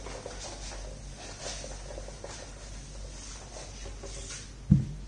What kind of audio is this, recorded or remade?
recorded